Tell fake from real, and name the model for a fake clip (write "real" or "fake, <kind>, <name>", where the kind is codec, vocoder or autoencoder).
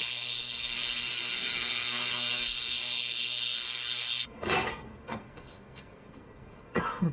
fake, codec, SNAC